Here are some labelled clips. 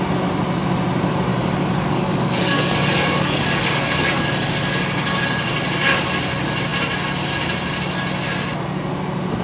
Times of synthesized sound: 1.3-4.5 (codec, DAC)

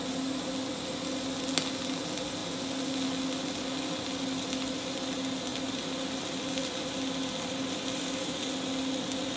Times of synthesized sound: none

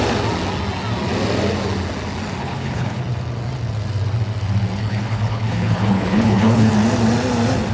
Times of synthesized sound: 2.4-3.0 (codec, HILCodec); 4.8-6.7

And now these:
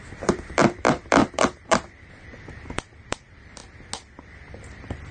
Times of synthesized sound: 0.0-3.6 (vocoder, BigVGAN v2); 4.2-5.1

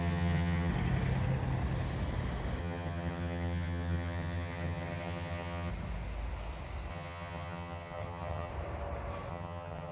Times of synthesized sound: 0.0-0.7 (vocoder, HiFi-GAN); 2.6-5.7; 6.9-8.5; 9.3-9.9

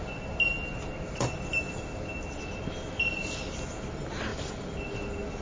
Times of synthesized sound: 4.3-4.9 (vocoder, BigVGAN v2)

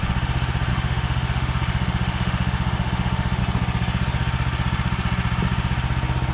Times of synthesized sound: 0.7-3.4 (autoencoder, DAC-VAE)